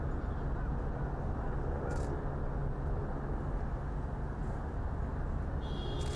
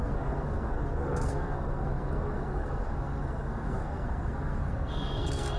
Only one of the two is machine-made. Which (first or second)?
second